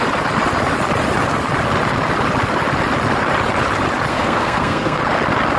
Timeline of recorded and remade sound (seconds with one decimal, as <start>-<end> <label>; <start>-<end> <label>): 0.0-4.1 recorded; 4.1-5.0 remade; 5.0-5.6 recorded